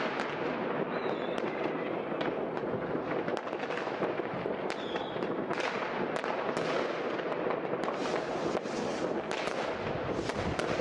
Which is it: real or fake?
real